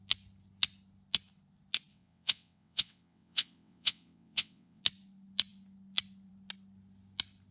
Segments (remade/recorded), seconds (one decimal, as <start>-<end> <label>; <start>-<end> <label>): 0.0-1.9 recorded; 1.9-4.8 remade; 4.8-7.5 recorded